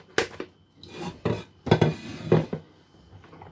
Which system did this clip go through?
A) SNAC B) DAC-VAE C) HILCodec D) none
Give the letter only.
D